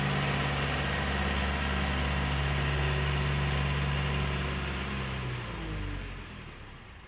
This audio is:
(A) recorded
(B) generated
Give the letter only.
A